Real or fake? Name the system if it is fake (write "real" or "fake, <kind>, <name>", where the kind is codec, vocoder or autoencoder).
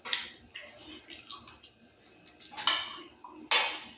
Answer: real